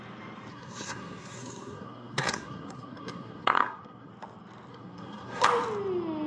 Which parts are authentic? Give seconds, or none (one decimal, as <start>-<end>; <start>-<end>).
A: 0.0-0.5; 4.1-4.7; 5.4-6.3